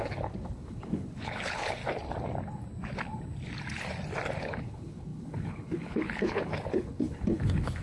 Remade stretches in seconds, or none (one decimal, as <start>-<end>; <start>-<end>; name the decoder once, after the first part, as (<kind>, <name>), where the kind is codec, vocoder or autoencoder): 0.0-1.8 (codec, HILCodec); 4.4-7.8